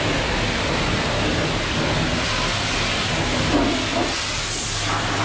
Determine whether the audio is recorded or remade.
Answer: recorded